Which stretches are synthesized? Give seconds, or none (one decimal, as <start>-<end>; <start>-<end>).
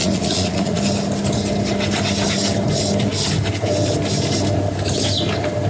0.0-0.8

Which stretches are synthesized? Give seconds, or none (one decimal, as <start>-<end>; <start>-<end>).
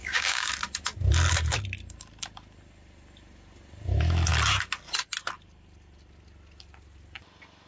0.0-0.5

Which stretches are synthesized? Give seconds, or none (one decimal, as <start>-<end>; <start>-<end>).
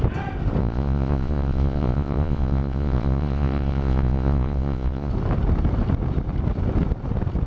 0.6-5.1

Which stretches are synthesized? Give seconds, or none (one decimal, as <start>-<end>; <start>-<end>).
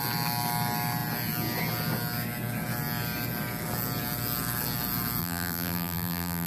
5.2-6.5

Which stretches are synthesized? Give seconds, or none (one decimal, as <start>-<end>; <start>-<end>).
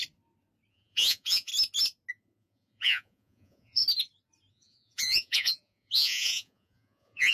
0.7-1.5; 2.1-3.8; 4.5-7.3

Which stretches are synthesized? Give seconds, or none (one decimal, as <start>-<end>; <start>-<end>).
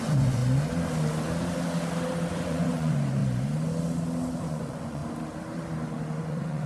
0.0-0.4; 2.3-3.2; 4.4-5.0; 6.2-6.7